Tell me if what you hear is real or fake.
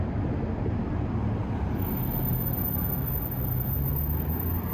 real